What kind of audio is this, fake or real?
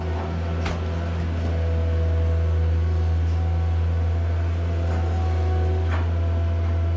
real